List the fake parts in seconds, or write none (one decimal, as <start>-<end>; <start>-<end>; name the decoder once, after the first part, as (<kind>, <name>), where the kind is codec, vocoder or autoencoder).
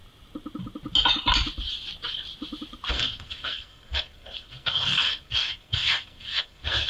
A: 2.9-6.9 (codec, SNAC)